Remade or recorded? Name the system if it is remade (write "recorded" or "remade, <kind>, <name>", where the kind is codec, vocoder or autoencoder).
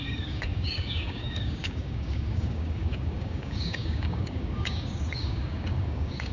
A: remade, codec, DAC